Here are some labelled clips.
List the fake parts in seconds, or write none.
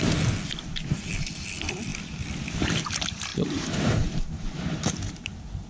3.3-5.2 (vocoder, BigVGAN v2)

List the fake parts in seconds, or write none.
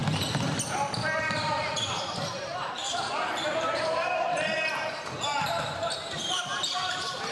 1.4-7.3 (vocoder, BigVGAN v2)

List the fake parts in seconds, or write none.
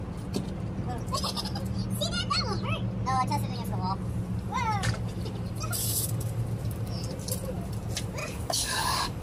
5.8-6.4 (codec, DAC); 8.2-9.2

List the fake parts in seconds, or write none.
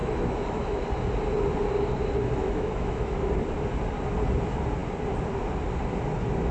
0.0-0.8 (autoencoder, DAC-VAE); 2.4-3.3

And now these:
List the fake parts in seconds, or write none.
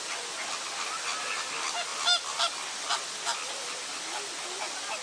none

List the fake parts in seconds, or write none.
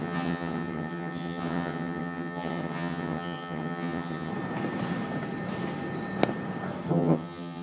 0.0-4.3 (vocoder, HiFi-GAN); 6.9-7.6